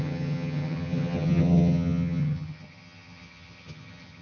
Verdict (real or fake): fake